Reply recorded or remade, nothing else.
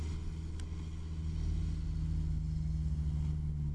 recorded